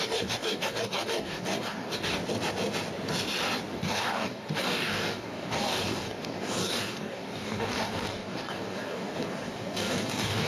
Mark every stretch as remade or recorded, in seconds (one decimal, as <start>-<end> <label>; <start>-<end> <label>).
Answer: 0.0-2.2 remade; 2.2-3.7 recorded; 3.7-10.5 remade